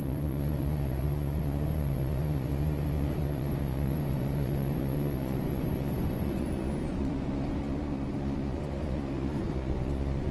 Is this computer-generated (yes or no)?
yes